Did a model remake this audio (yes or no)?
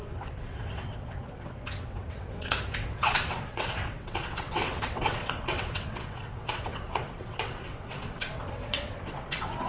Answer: yes